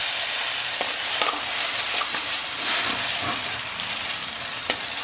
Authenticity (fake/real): fake